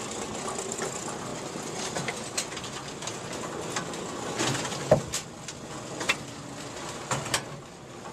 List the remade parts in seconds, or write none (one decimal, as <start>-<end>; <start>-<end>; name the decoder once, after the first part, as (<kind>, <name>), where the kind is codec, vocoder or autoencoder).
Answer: none